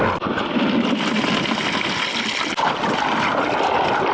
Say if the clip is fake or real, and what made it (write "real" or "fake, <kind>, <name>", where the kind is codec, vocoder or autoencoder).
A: real